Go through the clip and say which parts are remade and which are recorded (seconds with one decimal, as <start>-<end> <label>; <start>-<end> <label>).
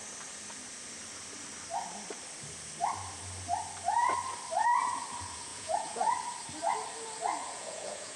0.0-5.5 recorded; 5.5-6.1 remade; 6.1-7.4 recorded; 7.4-8.2 remade